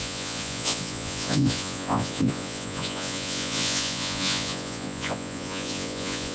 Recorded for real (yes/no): no